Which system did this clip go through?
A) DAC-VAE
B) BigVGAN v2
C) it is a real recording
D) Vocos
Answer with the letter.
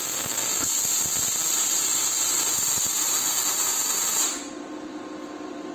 B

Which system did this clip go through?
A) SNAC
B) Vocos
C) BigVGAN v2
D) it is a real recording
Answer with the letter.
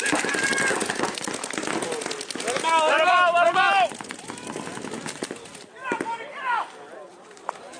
D